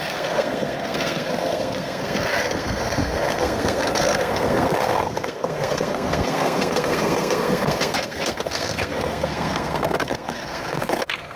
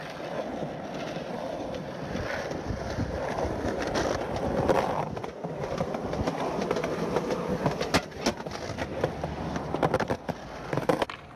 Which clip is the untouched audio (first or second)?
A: second